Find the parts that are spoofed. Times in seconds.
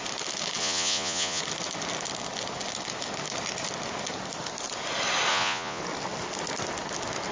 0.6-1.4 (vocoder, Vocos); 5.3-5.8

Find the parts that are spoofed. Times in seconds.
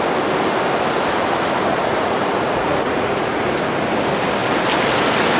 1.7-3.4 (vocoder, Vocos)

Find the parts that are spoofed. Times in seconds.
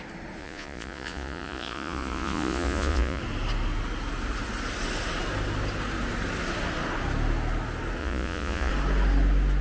0.4-3.2 (vocoder, Vocos); 8.0-8.7